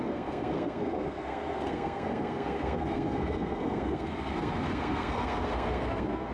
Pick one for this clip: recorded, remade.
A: remade